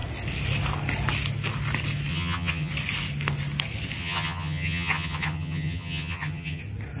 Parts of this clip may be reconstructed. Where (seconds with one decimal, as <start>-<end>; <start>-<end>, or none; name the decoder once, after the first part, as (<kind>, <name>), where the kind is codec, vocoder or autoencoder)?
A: 2.1-2.7 (vocoder, HiFi-GAN); 4.0-6.6